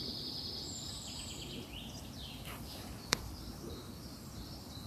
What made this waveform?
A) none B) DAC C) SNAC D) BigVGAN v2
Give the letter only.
D